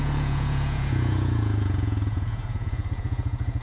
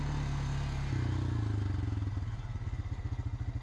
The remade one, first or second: first